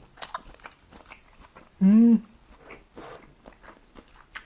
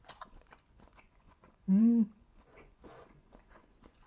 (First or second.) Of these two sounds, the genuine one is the first